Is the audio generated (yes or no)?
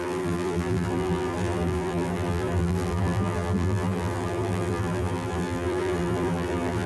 yes